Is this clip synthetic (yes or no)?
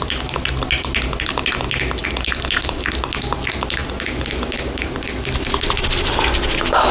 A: no